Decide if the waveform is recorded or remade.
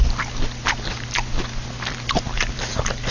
recorded